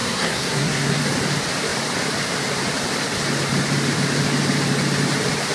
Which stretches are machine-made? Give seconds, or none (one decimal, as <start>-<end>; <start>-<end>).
0.0-1.0